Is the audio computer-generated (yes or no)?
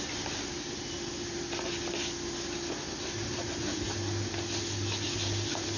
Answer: no